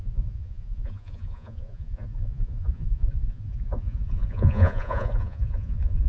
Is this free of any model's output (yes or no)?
no